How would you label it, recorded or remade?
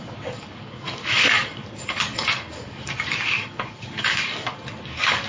remade